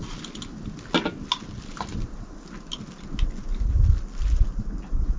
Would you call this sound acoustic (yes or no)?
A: yes